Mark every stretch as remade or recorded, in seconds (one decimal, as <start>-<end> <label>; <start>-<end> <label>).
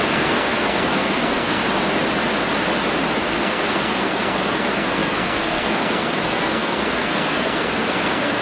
0.0-1.6 remade; 1.6-3.2 recorded; 3.2-8.4 remade